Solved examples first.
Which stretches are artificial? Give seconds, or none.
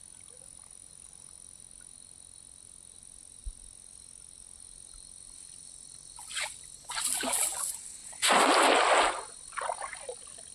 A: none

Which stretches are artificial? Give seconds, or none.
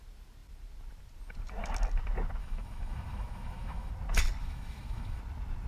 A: 2.4-3.9 (autoencoder, DAC-VAE); 4.4-5.2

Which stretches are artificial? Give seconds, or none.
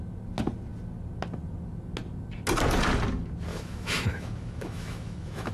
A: 3.5-5.5 (autoencoder, DAC-VAE)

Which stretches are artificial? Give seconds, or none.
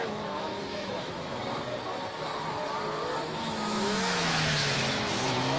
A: 0.0-1.4 (autoencoder, DAC-VAE); 3.4-5.6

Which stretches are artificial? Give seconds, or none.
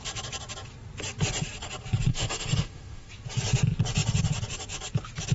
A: 2.1-3.1 (autoencoder, DAC-VAE)